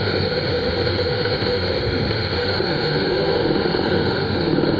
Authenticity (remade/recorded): remade